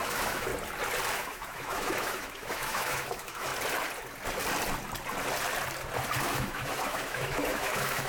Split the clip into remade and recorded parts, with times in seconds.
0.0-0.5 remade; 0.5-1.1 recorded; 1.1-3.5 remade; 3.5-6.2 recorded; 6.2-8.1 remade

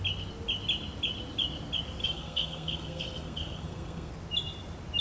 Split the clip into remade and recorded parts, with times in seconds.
0.0-2.0 recorded; 2.0-4.1 remade; 4.1-5.0 recorded

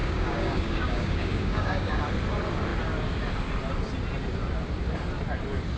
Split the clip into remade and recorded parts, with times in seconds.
0.0-2.0 remade; 2.0-5.8 recorded

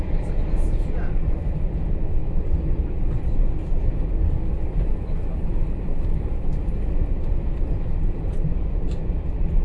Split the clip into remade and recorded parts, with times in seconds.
0.0-2.2 remade; 2.2-3.2 recorded; 3.2-4.7 remade; 4.7-5.4 recorded; 5.4-9.6 remade